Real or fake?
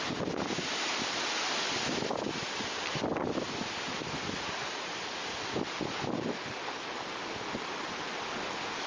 real